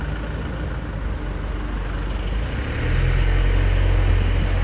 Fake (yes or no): no